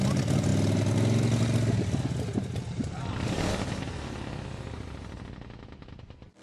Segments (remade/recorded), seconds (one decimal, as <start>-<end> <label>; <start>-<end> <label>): 0.0-6.4 recorded

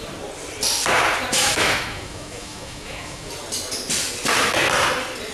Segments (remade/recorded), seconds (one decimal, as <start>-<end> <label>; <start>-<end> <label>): 0.0-1.3 recorded; 1.3-3.3 remade; 3.3-5.3 recorded

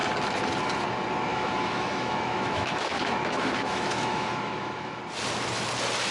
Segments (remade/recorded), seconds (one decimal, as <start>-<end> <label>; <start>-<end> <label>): 0.0-1.3 recorded; 1.3-5.0 remade; 5.0-6.1 recorded

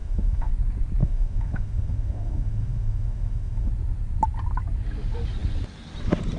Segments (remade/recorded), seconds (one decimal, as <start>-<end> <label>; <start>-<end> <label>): 0.0-0.5 remade; 0.5-1.0 recorded; 1.0-3.7 remade; 3.7-6.4 recorded

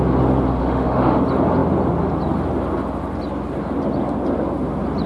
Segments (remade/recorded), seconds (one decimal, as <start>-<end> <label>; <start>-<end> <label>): 0.0-0.6 recorded; 0.6-1.2 remade; 1.2-5.1 recorded